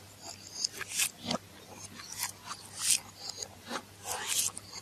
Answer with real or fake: real